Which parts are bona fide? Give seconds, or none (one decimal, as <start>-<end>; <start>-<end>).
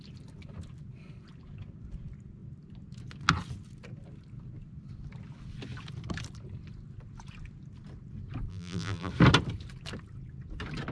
0.0-8.5; 9.1-10.9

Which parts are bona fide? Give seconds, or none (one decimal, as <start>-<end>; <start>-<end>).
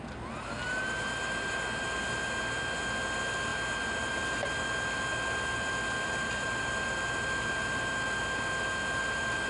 0.0-9.5